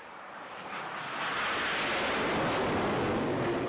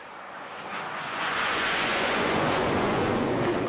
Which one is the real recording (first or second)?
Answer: first